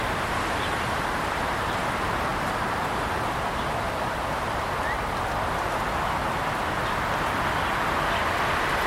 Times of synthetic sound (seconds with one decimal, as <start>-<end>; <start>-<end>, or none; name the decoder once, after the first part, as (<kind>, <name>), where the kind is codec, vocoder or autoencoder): none